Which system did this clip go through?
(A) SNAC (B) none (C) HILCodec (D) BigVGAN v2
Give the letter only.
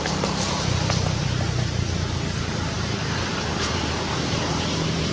D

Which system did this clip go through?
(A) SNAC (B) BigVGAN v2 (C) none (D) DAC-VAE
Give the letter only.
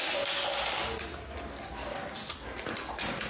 C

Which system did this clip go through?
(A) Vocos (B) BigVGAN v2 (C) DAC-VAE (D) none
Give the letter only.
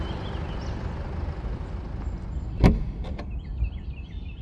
D